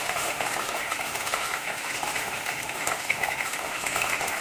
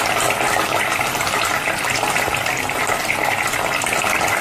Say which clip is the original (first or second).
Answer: second